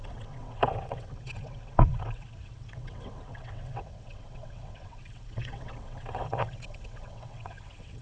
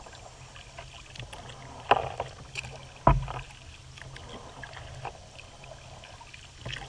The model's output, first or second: first